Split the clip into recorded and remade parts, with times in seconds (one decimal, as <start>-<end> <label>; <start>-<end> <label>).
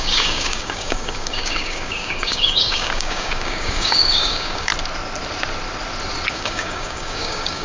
0.0-4.7 remade; 4.7-6.3 recorded; 6.3-7.6 remade